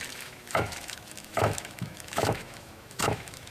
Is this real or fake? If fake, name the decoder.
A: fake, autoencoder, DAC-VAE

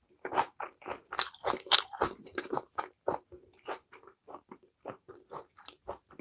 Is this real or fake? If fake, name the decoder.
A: fake, vocoder, BigVGAN v2